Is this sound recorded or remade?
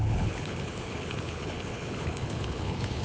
remade